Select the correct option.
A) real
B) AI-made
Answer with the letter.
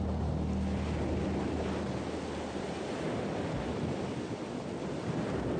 A